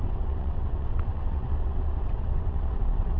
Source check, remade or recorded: remade